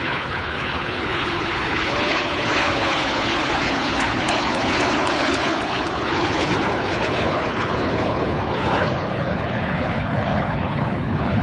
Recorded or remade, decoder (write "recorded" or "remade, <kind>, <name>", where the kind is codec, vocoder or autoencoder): remade, codec, HILCodec